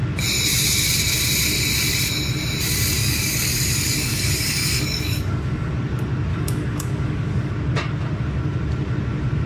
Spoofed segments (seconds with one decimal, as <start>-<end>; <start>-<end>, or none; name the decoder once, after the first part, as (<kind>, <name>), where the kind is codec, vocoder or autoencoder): 3.0-5.7 (codec, DAC); 6.3-7.5